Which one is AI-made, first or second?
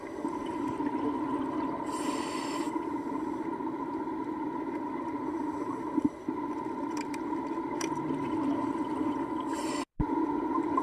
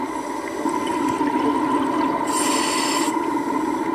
first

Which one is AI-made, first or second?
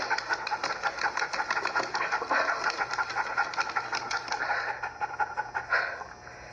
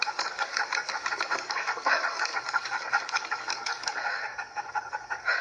second